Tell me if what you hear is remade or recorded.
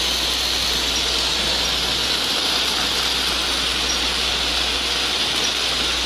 recorded